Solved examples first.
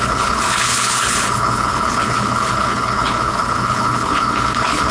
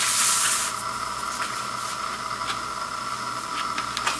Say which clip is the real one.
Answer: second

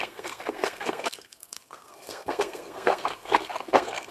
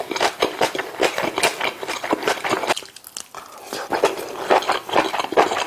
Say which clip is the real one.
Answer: second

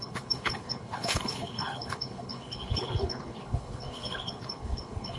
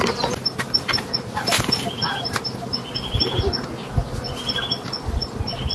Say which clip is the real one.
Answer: second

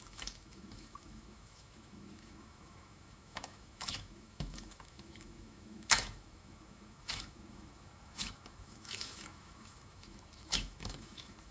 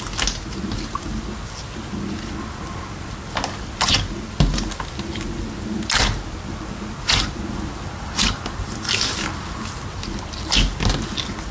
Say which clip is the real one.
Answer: second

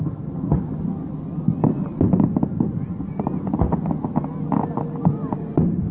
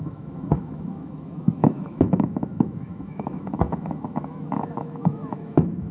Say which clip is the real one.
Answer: first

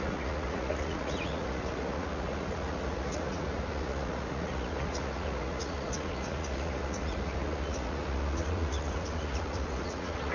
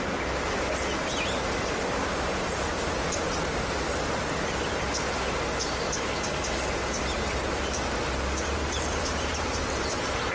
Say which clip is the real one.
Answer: second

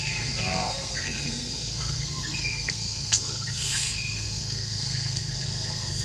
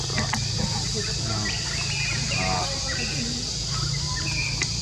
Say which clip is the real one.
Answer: second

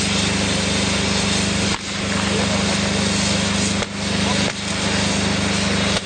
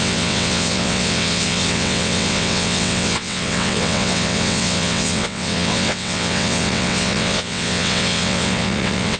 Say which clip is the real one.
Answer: first